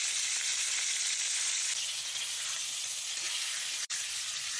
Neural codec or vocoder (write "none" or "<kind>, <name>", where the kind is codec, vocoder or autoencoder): vocoder, BigVGAN v2